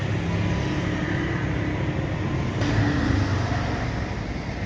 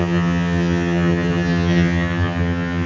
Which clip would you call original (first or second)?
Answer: first